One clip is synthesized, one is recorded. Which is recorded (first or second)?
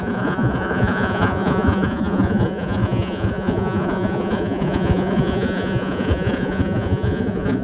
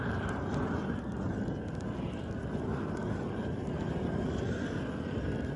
second